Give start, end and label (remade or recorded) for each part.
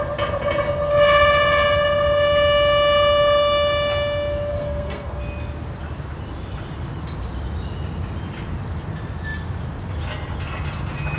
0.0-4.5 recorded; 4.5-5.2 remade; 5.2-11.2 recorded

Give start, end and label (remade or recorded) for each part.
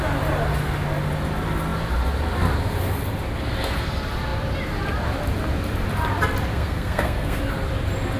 0.0-6.5 recorded; 6.5-7.4 remade; 7.4-8.2 recorded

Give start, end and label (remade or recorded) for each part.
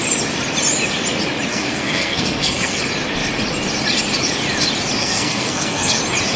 0.0-1.5 recorded; 1.5-2.8 remade; 2.8-5.0 recorded; 5.0-6.0 remade; 6.0-6.4 recorded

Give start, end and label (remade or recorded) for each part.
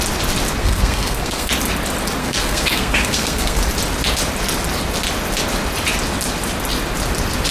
0.0-0.6 recorded; 0.6-1.5 remade; 1.5-2.2 recorded; 2.2-3.6 remade; 3.6-7.5 recorded